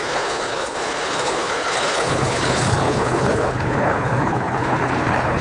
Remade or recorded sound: remade